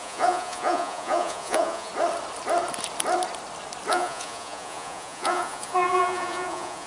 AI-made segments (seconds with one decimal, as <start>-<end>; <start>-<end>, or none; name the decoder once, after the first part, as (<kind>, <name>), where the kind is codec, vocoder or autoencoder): 0.0-1.9 (vocoder, Vocos); 3.9-6.9

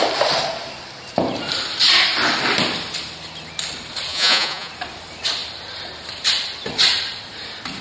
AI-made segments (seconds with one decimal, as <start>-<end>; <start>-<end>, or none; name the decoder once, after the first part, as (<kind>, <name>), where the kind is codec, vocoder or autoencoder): 4.1-4.7 (vocoder, Vocos)